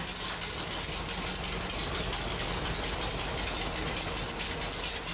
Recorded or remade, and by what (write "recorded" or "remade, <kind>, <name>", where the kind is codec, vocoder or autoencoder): recorded